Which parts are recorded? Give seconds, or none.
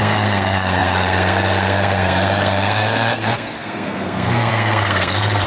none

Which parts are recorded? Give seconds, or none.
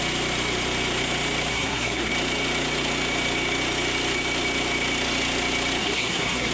0.0-1.5; 2.1-5.8